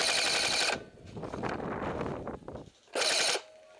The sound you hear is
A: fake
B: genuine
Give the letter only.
B